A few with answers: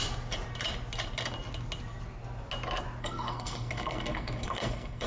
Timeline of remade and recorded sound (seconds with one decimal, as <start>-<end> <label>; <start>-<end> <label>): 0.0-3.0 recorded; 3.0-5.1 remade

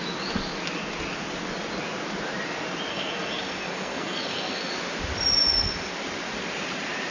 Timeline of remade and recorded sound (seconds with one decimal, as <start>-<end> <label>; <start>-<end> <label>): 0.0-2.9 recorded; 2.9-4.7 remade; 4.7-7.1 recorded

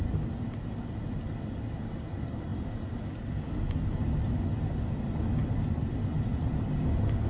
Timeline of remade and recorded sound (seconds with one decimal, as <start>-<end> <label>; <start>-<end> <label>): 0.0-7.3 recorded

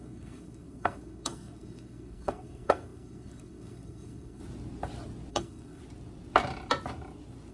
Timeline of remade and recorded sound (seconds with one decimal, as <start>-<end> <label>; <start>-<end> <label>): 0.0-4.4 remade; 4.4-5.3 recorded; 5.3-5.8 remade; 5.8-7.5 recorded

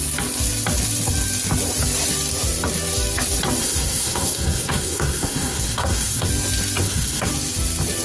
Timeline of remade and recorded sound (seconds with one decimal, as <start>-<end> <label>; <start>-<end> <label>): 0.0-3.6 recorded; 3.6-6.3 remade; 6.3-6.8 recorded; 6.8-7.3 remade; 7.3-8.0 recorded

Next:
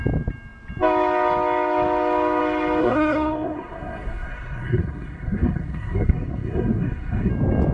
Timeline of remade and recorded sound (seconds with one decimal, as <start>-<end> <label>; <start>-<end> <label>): 0.0-2.8 recorded; 2.8-7.3 remade; 7.3-7.7 recorded